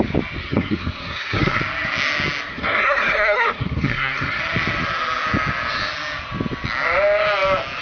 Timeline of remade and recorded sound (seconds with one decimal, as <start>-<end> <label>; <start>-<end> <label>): 0.0-0.4 recorded; 0.4-1.6 remade; 1.6-2.5 recorded; 2.5-4.4 remade; 4.4-7.8 recorded